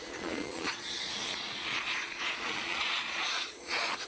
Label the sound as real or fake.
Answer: fake